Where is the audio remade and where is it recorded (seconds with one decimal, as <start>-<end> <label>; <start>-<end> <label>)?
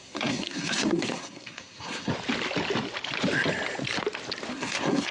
0.0-2.1 remade; 2.1-4.5 recorded; 4.5-5.1 remade